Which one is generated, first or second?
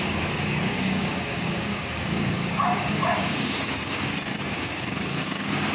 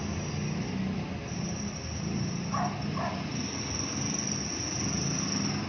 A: first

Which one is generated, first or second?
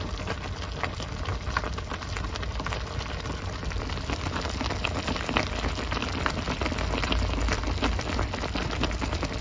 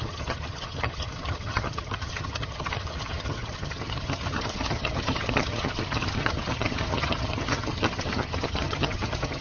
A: second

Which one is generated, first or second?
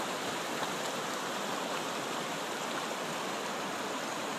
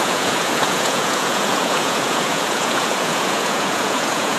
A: second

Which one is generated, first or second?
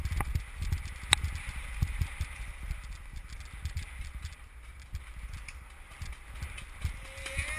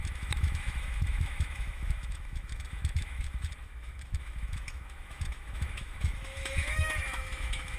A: second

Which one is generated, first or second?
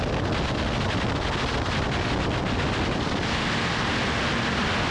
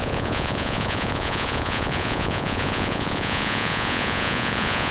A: second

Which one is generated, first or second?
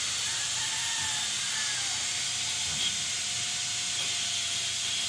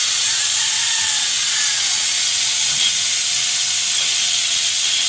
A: second